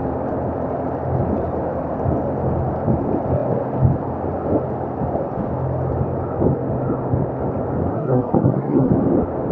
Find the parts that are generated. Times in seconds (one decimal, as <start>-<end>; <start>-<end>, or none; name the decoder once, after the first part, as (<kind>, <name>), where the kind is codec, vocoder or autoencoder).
7.9-8.9 (codec, SNAC)